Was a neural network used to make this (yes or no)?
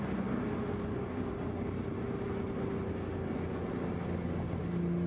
no